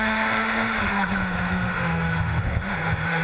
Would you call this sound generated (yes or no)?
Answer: yes